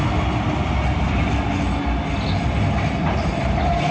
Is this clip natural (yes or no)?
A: yes